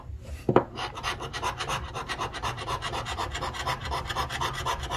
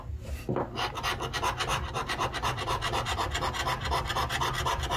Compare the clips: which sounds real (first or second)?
second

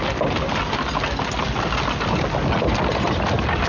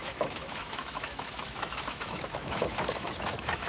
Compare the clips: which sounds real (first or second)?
first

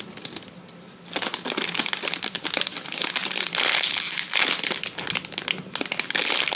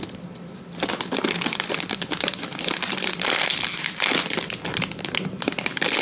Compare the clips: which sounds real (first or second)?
first